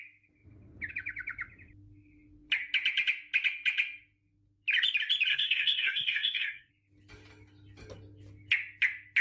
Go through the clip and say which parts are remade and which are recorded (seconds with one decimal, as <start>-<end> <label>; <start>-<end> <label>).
0.0-5.3 recorded; 5.3-6.7 remade; 6.7-9.2 recorded